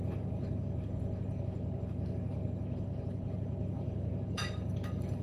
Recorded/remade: remade